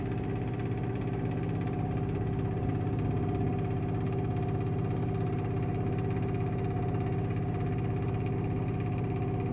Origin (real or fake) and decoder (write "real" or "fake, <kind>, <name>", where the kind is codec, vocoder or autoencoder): real